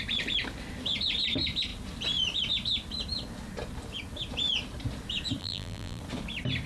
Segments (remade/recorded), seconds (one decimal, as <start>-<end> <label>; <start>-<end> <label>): 0.0-5.4 recorded; 5.4-6.0 remade; 6.0-6.7 recorded